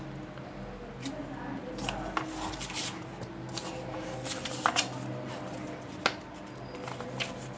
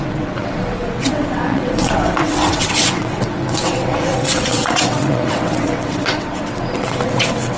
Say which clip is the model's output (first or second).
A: second